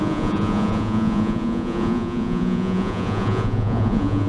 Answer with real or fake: fake